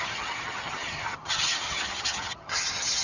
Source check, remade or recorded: remade